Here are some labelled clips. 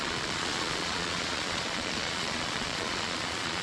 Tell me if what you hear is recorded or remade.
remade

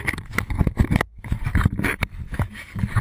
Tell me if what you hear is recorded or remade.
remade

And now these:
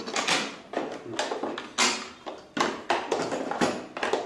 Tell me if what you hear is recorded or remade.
recorded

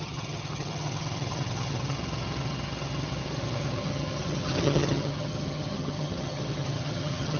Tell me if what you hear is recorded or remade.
remade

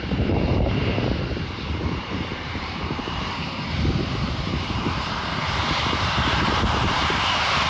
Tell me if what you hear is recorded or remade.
remade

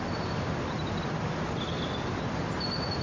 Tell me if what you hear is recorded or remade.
recorded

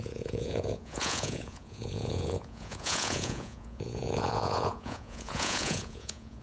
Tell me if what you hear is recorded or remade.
remade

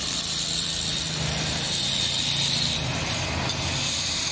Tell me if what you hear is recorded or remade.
remade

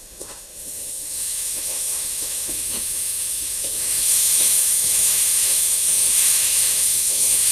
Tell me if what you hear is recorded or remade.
remade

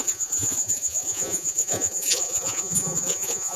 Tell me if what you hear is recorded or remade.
remade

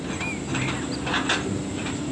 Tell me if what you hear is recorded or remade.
recorded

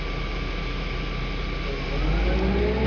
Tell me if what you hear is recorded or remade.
recorded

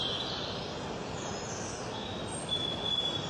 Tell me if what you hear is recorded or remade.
recorded